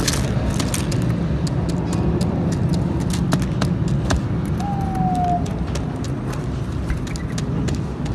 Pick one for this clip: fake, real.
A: real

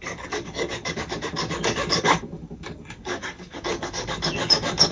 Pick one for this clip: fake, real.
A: fake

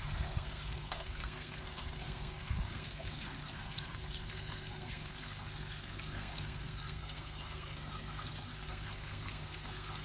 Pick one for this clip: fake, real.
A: fake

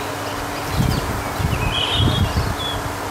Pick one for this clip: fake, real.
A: real